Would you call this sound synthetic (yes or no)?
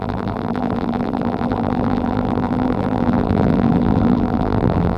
yes